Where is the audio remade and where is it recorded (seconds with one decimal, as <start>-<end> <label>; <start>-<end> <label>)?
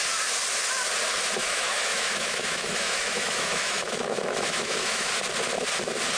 0.0-1.4 recorded; 1.4-5.1 remade; 5.1-6.2 recorded